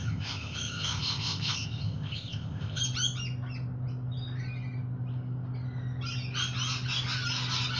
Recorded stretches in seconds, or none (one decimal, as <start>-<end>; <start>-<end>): 2.8-7.8